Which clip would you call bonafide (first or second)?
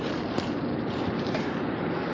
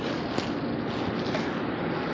second